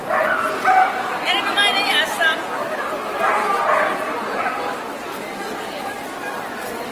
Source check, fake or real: real